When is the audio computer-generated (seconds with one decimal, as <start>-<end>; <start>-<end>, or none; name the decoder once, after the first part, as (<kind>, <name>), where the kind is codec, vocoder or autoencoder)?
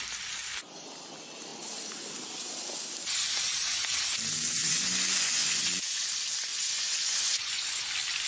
4.6-6.1 (vocoder, Vocos); 6.5-7.8